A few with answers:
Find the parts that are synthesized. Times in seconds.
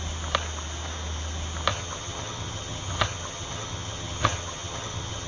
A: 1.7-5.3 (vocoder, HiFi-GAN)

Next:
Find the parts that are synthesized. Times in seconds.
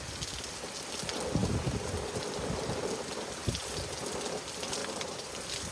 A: 1.4-2.5 (vocoder, BigVGAN v2); 4.8-5.3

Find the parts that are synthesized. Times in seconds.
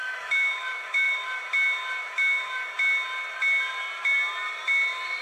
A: 0.0-1.5 (autoencoder, DAC-VAE); 2.0-2.7